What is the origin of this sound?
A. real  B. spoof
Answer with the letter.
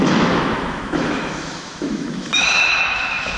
B